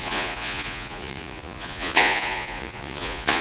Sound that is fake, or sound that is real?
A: fake